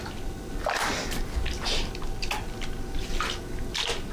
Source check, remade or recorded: recorded